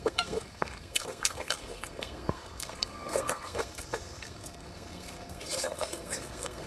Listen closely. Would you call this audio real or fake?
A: fake